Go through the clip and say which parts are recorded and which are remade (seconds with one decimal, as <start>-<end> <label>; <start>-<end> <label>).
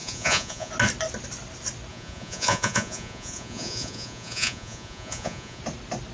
0.0-0.7 remade; 0.7-1.9 recorded; 1.9-5.6 remade; 5.6-6.1 recorded